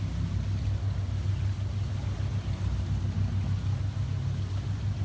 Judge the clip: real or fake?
real